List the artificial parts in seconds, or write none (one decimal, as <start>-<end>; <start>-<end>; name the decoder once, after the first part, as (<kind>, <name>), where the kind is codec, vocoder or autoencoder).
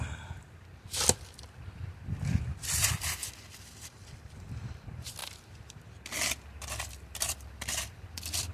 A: 0.0-3.2 (vocoder, BigVGAN v2); 3.8-8.5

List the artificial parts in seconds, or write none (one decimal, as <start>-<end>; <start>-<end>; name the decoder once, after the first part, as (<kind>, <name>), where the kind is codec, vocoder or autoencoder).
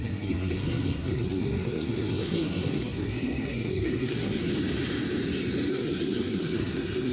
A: 0.0-4.5 (codec, SNAC); 5.7-7.1